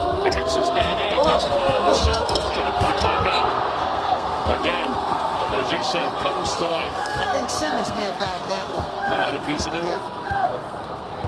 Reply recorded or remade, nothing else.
remade